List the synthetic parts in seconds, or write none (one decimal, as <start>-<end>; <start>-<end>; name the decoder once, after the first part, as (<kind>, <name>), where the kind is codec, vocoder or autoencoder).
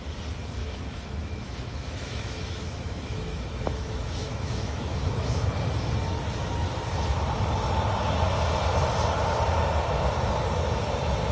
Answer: 0.6-5.5 (autoencoder, DAC-VAE)